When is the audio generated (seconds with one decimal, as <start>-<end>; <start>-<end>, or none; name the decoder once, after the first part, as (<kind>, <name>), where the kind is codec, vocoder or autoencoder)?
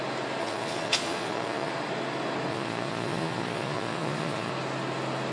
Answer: 0.4-1.7 (vocoder, Vocos); 2.5-4.5